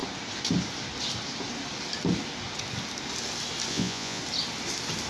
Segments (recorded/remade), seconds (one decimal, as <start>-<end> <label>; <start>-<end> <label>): 0.0-3.7 recorded; 3.7-4.2 remade; 4.2-5.1 recorded